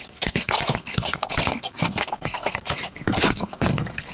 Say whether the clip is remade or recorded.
remade